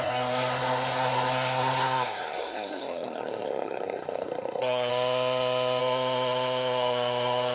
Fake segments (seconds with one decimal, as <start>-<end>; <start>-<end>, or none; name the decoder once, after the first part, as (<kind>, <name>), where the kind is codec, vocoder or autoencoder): 0.0-4.9 (codec, SNAC); 5.8-7.5